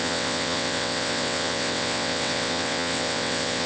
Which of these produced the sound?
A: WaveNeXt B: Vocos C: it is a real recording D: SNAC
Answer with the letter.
A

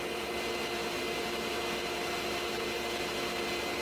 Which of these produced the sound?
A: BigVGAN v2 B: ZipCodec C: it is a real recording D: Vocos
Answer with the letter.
C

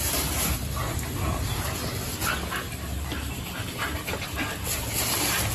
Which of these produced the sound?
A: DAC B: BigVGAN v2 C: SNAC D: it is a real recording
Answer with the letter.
D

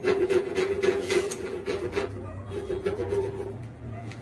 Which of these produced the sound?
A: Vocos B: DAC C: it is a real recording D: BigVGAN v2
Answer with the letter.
D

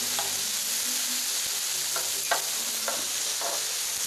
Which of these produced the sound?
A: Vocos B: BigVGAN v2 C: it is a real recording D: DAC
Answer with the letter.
C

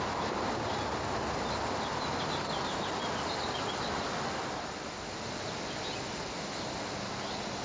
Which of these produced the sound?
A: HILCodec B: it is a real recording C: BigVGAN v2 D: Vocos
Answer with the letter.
B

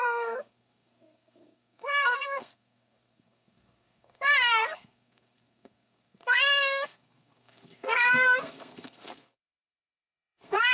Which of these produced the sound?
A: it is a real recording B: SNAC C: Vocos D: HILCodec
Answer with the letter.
B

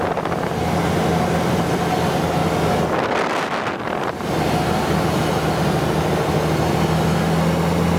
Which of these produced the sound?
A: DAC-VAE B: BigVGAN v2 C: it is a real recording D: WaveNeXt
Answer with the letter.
C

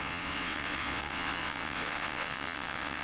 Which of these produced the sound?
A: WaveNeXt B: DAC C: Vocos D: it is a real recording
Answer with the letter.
A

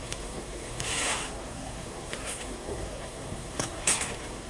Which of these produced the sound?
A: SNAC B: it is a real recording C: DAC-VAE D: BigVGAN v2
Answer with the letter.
A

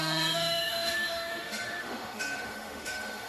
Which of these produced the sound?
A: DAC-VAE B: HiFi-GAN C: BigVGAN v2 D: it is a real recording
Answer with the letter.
A